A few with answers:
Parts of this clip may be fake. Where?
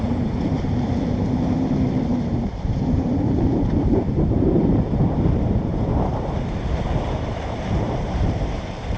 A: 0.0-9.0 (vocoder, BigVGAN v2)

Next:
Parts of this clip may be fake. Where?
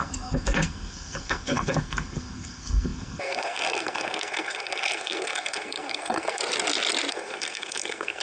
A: 0.0-6.4 (codec, SNAC); 7.1-8.2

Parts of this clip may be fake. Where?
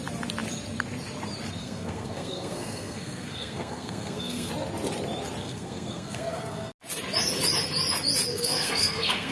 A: 1.6-4.5 (codec, SNAC); 5.4-6.7; 8.3-9.3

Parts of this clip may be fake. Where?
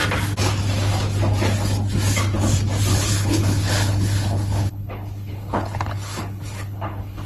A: 2.9-7.3 (codec, HILCodec)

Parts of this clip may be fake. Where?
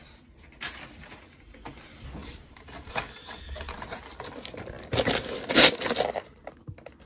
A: 2.2-2.9 (vocoder, BigVGAN v2)